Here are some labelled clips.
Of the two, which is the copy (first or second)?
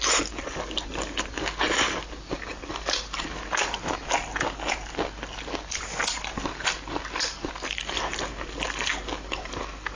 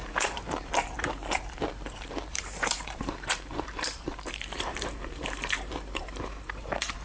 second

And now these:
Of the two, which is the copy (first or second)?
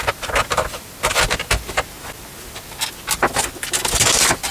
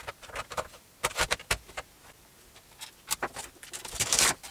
second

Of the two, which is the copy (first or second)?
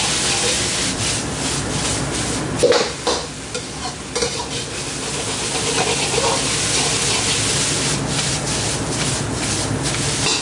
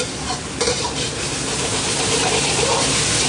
second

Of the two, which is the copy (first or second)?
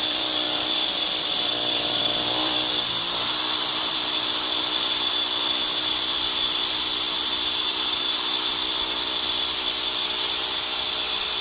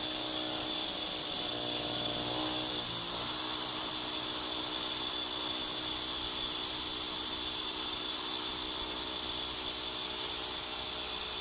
first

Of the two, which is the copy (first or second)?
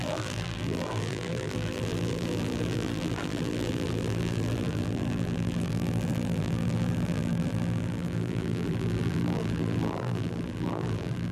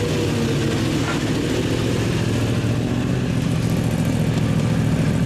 first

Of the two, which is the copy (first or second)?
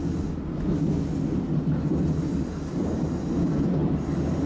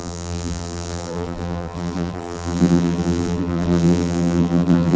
second